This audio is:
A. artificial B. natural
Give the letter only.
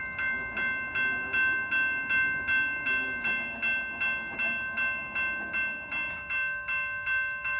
B